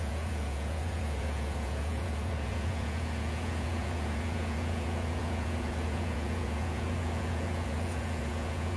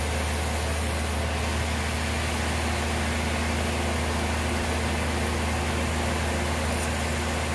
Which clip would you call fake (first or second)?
first